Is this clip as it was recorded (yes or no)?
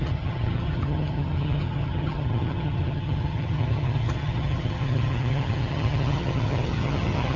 no